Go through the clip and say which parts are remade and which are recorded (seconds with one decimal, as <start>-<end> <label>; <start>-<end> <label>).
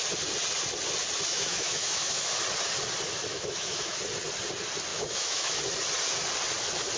0.0-1.3 recorded; 1.3-2.4 remade; 2.4-3.3 recorded; 3.3-4.0 remade; 4.0-4.9 recorded; 4.9-5.6 remade; 5.6-7.0 recorded